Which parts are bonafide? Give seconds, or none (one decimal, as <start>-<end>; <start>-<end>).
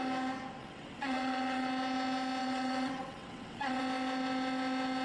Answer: 0.0-0.6; 1.7-2.4; 3.8-5.0